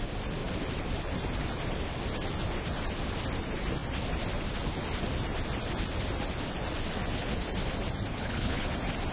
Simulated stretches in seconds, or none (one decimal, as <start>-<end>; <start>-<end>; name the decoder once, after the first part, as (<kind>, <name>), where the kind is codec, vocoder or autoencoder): 8.1-8.7 (codec, HILCodec)